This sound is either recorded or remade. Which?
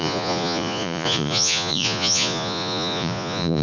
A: remade